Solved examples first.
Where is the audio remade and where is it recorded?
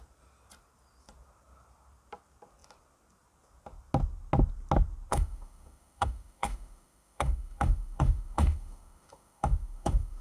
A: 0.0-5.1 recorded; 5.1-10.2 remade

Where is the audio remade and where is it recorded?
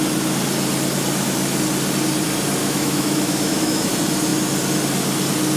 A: 0.0-2.6 recorded; 2.6-3.9 remade; 3.9-5.6 recorded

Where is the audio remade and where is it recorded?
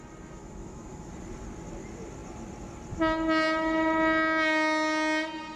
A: 0.0-0.4 recorded; 0.4-1.1 remade; 1.1-5.6 recorded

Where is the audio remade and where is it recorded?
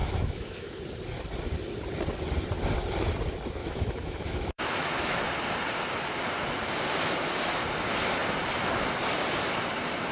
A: 0.0-0.8 remade; 0.8-3.6 recorded; 3.6-5.2 remade; 5.2-10.1 recorded